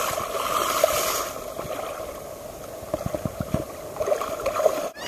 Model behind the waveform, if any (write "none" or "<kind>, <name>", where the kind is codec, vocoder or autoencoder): vocoder, BigVGAN v2